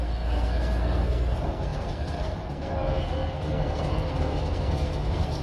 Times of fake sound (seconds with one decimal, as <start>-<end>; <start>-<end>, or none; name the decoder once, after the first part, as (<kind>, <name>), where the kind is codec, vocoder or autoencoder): 0.0-5.4 (codec, SNAC)